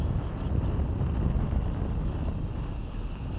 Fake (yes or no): no